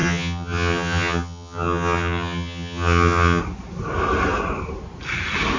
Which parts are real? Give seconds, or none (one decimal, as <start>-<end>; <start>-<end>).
3.4-5.6